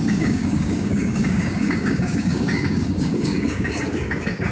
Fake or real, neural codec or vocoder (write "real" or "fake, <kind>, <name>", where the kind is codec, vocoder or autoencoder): fake, codec, DAC